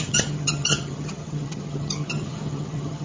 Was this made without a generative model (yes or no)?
no